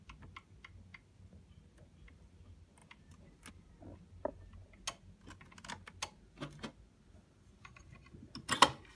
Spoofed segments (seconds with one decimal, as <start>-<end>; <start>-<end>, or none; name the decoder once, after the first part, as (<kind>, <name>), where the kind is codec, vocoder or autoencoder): none